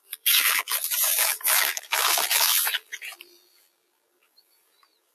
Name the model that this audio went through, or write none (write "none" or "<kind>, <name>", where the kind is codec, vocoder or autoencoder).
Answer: vocoder, BigVGAN v2